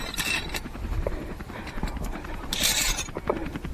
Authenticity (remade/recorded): remade